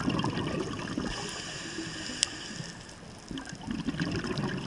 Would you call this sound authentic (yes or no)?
yes